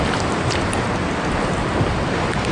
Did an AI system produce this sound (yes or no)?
no